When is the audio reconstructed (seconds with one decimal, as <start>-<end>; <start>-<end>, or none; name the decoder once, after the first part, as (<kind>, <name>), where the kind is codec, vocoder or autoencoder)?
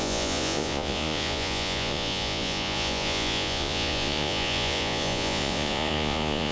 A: 0.0-6.5 (vocoder, Vocos)